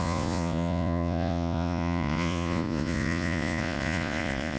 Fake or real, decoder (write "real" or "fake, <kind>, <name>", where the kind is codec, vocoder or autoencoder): fake, vocoder, Vocos